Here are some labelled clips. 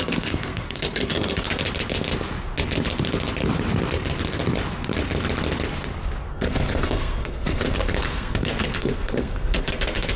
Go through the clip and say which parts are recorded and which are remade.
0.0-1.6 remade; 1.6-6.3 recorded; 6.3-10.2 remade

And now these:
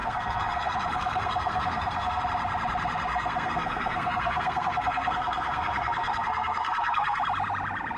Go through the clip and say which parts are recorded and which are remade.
0.0-2.2 remade; 2.2-3.1 recorded; 3.1-7.2 remade; 7.2-8.0 recorded

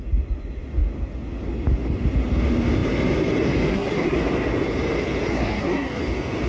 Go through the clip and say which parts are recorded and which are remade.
0.0-3.7 recorded; 3.7-4.2 remade; 4.2-5.3 recorded; 5.3-6.0 remade; 6.0-6.5 recorded

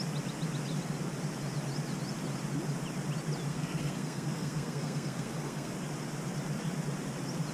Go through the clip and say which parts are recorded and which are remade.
0.0-3.5 recorded; 3.5-5.7 remade; 5.7-7.5 recorded

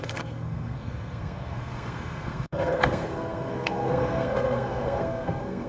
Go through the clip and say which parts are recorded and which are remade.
0.0-5.7 remade

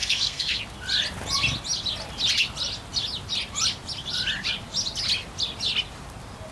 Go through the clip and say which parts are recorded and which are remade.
0.0-0.6 remade; 0.6-6.5 recorded

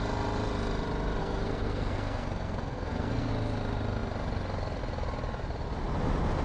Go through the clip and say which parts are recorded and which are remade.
0.0-1.2 recorded; 1.2-3.3 remade; 3.3-6.4 recorded